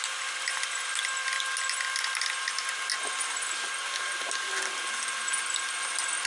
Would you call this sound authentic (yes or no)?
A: yes